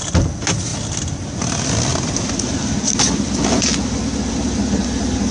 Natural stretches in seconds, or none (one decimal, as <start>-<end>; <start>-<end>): 0.0-5.3